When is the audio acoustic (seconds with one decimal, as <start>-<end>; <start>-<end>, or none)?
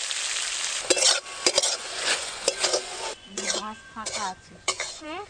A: 0.0-1.7